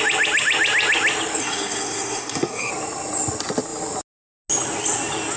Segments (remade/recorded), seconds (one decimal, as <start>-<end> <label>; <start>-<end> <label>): 0.0-1.4 recorded; 1.4-2.7 remade; 2.7-5.4 recorded